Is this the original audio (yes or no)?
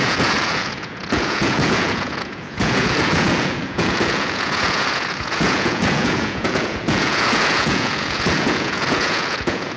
no